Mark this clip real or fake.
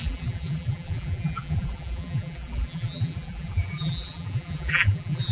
fake